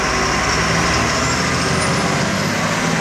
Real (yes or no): yes